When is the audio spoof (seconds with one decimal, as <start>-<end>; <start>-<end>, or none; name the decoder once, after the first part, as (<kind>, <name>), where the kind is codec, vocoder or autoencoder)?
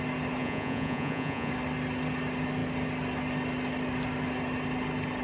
0.4-1.5 (vocoder, Vocos)